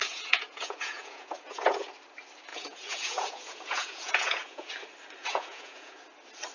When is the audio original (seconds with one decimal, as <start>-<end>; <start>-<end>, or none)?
1.9-2.5; 4.7-5.2; 6.0-6.5

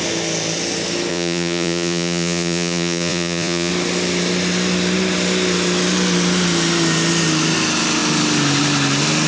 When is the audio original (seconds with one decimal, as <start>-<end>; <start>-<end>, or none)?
0.0-1.1; 3.7-9.3

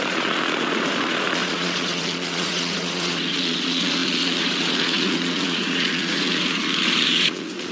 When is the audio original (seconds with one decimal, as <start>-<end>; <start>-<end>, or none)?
none

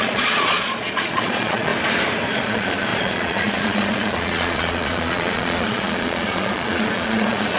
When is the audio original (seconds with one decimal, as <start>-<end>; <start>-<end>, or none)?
1.7-2.3

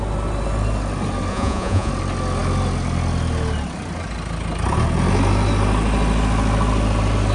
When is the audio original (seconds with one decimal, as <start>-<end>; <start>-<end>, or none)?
0.0-1.3; 1.9-7.3

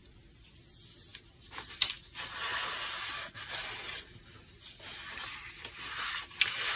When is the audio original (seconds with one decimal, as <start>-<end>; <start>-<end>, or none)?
0.0-6.8

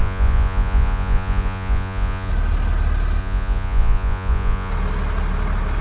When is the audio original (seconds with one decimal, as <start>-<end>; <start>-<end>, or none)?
2.3-3.2; 4.7-5.8